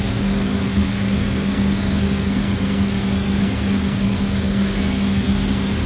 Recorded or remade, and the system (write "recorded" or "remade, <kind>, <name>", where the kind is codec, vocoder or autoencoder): remade, codec, SNAC